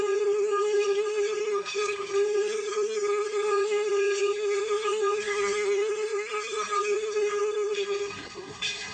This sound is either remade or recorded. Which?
remade